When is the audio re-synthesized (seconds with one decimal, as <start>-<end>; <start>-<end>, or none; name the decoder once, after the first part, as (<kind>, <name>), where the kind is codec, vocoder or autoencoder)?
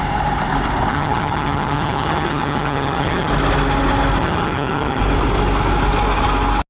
0.9-3.3 (vocoder, HiFi-GAN); 4.2-5.0